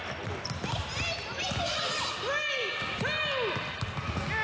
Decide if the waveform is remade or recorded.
recorded